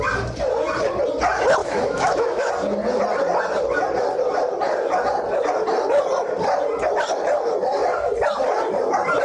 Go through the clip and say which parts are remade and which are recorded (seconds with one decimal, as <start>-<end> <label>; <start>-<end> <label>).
0.0-1.6 recorded; 1.6-2.5 remade; 2.5-9.2 recorded